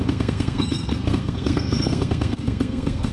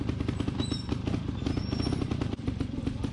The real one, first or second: second